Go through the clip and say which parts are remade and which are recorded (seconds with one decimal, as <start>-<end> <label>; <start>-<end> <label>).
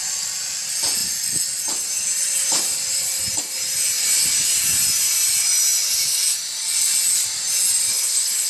0.0-7.9 recorded; 7.9-8.5 remade